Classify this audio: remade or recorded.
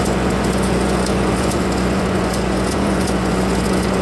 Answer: remade